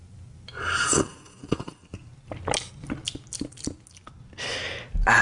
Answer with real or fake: real